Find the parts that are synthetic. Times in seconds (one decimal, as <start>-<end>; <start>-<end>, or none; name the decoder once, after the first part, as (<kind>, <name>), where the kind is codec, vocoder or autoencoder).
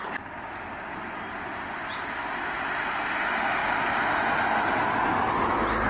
none